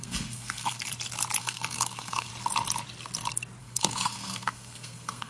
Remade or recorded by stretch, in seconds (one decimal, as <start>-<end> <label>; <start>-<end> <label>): 0.0-0.8 remade; 0.8-1.4 recorded; 1.4-2.3 remade; 2.3-3.6 recorded; 3.6-5.3 remade